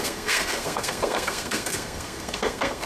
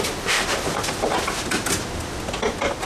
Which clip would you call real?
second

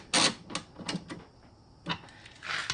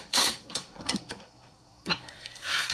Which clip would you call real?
first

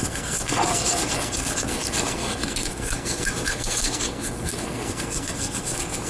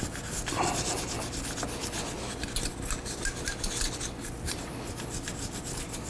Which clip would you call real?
second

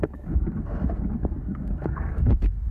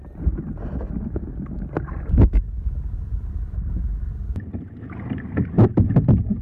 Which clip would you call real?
second